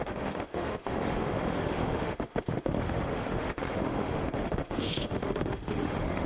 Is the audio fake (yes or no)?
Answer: yes